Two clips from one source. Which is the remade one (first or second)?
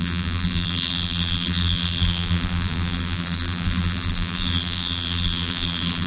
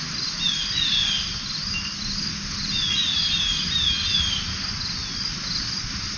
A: first